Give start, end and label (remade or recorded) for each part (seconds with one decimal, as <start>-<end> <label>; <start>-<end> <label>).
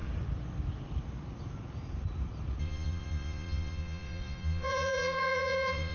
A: 0.0-2.6 recorded; 2.6-5.9 remade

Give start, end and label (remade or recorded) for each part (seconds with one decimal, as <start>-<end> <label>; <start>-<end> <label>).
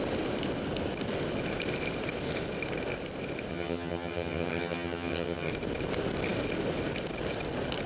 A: 0.0-3.5 recorded; 3.5-5.5 remade; 5.5-7.9 recorded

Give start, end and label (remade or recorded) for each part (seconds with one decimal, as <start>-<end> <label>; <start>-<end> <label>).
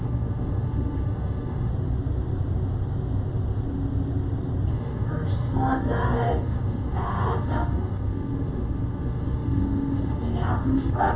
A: 0.0-1.7 remade; 1.7-4.7 recorded; 4.7-11.2 remade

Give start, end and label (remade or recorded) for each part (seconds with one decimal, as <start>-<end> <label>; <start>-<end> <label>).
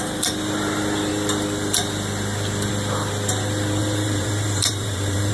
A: 0.0-3.8 recorded; 3.8-5.3 remade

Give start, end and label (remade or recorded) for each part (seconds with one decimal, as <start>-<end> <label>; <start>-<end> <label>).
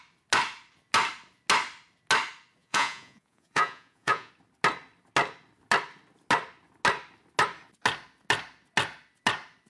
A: 0.0-2.6 recorded; 2.6-4.3 remade; 4.3-9.7 recorded